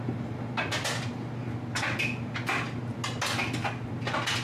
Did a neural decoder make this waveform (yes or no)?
no